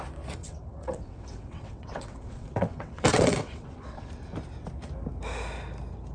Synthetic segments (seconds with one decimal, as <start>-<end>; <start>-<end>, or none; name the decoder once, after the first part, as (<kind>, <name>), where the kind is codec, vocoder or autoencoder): 0.4-4.1 (vocoder, WaveNeXt)